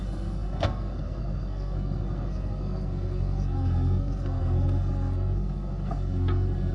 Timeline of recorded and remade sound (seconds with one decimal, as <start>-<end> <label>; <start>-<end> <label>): 0.0-6.7 remade